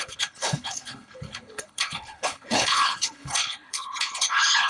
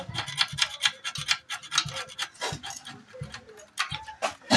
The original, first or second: second